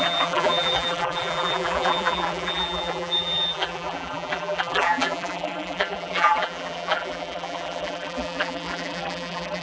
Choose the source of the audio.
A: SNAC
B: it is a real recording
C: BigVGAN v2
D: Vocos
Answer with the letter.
C